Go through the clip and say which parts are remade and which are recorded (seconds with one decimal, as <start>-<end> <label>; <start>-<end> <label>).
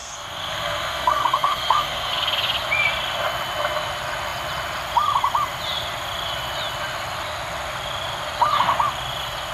0.0-2.1 remade; 2.1-9.5 recorded